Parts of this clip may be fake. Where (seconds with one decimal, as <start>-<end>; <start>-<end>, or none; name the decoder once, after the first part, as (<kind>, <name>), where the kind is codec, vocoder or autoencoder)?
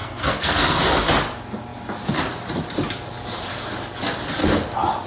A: 0.0-0.8 (codec, SNAC)